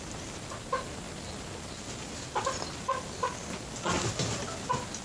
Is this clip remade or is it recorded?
recorded